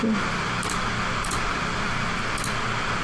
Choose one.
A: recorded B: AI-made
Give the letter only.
A